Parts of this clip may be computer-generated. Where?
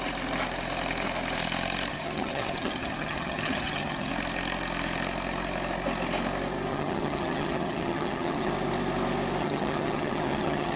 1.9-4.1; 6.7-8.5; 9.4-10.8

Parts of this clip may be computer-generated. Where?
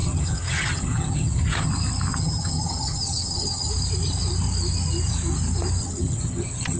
0.0-1.7; 2.1-3.7; 5.8-6.8